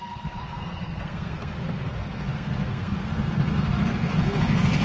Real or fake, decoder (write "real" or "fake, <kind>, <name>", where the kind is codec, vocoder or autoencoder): fake, codec, SNAC